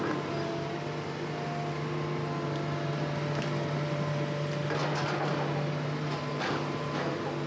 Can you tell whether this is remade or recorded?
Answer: recorded